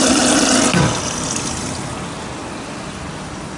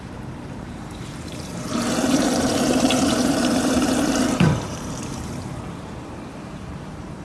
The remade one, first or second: second